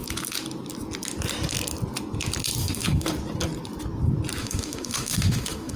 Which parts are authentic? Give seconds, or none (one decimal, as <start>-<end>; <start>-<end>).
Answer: 0.0-2.6; 3.1-4.4